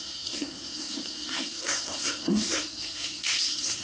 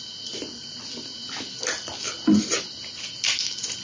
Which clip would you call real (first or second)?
second